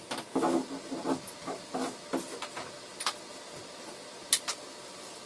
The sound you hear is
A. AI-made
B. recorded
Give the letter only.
B